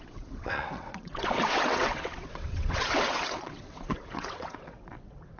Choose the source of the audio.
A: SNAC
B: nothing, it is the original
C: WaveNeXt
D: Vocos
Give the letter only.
C